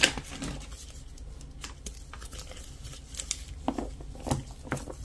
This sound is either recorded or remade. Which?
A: recorded